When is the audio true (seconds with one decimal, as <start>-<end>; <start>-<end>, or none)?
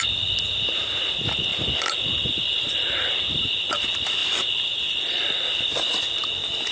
0.0-1.5; 3.7-4.2; 4.9-6.7